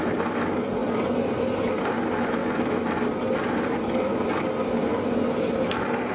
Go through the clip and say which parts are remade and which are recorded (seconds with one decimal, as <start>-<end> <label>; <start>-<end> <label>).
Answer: 0.0-6.1 recorded